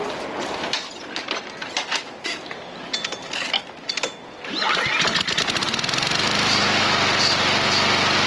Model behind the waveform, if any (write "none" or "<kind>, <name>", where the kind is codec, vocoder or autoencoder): none